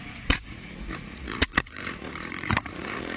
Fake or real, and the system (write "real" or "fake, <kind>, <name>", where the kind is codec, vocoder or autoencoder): fake, vocoder, Vocos